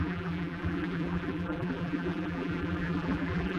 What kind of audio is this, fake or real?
fake